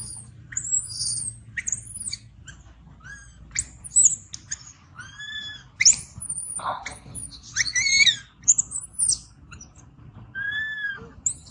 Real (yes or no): yes